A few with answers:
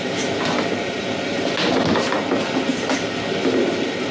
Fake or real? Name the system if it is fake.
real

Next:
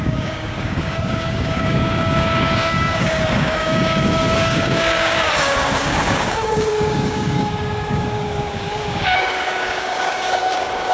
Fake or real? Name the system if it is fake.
fake, codec, DAC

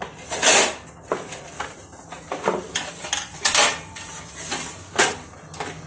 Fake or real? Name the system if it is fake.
real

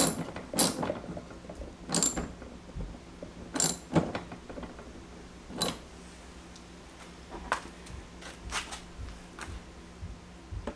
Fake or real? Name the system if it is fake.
real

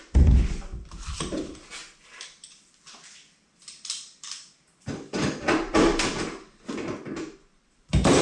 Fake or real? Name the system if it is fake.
fake, vocoder, BigVGAN v2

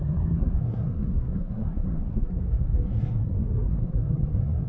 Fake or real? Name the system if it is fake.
fake, codec, SNAC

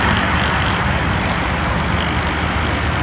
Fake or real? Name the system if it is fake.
real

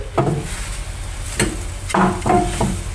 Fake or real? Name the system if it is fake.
real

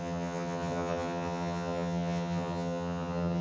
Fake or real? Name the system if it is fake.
fake, vocoder, HiFi-GAN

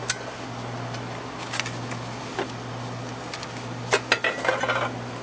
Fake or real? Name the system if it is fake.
real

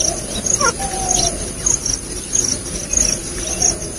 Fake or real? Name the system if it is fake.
real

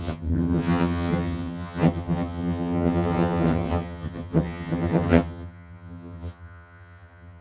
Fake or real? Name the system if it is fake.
fake, vocoder, HiFi-GAN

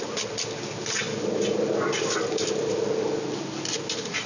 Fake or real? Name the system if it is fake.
real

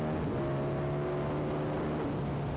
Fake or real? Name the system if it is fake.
real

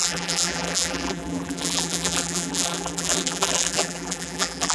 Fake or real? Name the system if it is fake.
fake, vocoder, BigVGAN v2